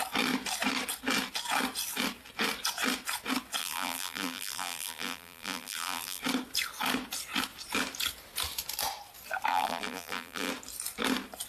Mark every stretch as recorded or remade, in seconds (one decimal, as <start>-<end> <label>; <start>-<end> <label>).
0.0-3.6 recorded; 3.6-6.2 remade; 6.2-9.5 recorded; 9.5-10.5 remade; 10.5-11.5 recorded